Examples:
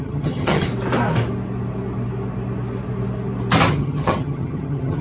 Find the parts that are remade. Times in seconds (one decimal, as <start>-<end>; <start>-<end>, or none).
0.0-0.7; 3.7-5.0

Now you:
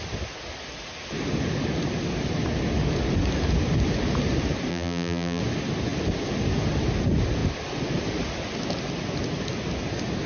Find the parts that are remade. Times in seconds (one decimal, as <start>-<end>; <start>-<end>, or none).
4.7-5.4

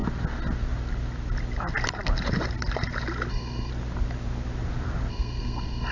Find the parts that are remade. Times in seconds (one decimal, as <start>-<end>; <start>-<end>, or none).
3.3-3.7; 5.1-5.9

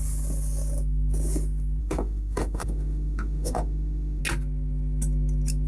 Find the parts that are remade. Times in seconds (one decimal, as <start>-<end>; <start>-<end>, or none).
1.8-4.2